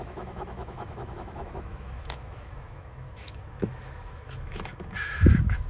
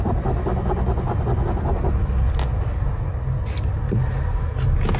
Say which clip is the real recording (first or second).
second